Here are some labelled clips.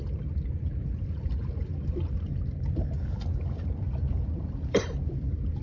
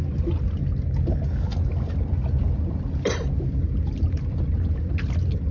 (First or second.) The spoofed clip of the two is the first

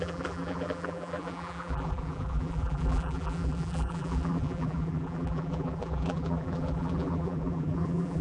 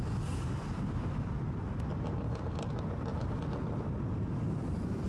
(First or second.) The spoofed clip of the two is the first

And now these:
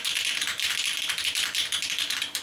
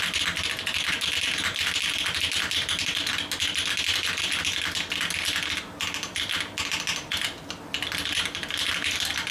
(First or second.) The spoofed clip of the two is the first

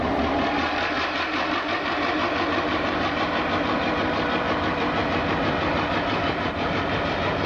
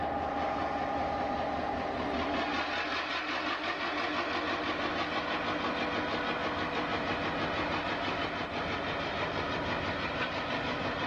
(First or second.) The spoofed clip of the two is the first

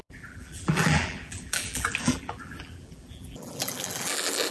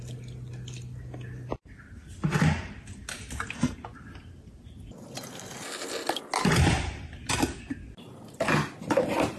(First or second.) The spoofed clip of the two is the first